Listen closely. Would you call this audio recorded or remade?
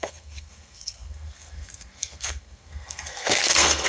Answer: remade